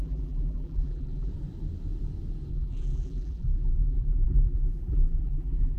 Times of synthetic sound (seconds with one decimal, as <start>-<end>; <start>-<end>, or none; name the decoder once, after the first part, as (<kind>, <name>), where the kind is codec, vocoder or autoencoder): 0.0-1.3 (vocoder, BigVGAN v2); 2.5-5.8